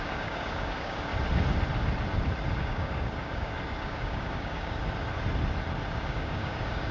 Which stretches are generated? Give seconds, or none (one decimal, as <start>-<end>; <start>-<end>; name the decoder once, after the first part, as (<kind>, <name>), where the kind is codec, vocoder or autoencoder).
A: 0.0-1.1 (codec, DAC); 2.6-4.8; 5.9-6.9